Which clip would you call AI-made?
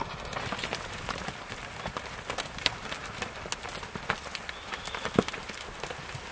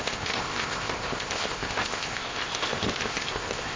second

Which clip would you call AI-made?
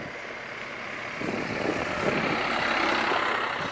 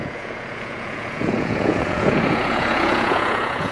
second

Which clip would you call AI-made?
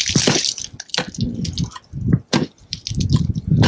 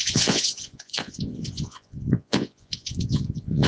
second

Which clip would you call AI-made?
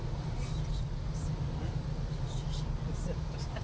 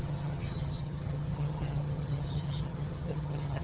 second